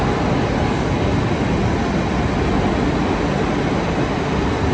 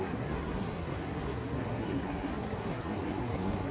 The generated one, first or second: second